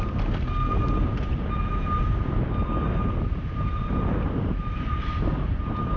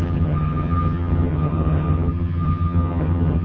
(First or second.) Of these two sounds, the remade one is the second